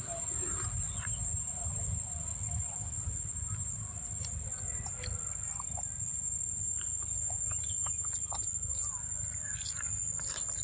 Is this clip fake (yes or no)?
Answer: no